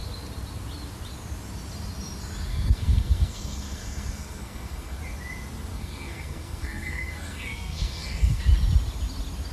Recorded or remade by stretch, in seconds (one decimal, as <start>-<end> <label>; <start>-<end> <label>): 0.0-2.5 recorded; 2.5-5.0 remade; 5.0-5.7 recorded; 5.7-8.4 remade; 8.4-9.5 recorded

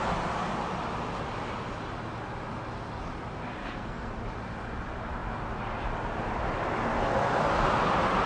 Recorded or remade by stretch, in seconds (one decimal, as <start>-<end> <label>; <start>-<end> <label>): 0.0-3.6 recorded; 3.6-4.1 remade; 4.1-8.3 recorded

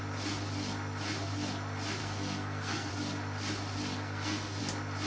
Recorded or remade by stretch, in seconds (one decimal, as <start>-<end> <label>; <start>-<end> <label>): 0.0-2.0 recorded; 2.0-2.9 remade; 2.9-3.9 recorded; 3.9-4.6 remade; 4.6-5.1 recorded

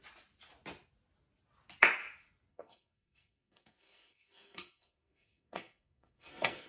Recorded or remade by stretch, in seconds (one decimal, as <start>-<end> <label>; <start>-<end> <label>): 0.0-2.5 recorded; 2.5-6.7 remade

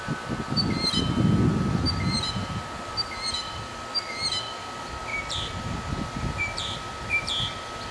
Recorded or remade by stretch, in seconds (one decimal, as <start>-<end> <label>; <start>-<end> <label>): 0.0-7.9 recorded

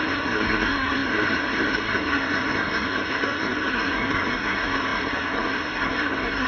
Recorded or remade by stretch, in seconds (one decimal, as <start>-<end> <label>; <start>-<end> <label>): 0.0-6.5 remade

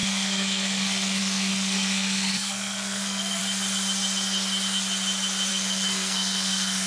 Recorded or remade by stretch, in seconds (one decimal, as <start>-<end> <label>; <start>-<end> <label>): 0.0-3.4 remade; 3.4-5.5 recorded; 5.5-6.9 remade